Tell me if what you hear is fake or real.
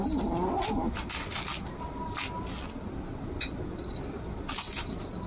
real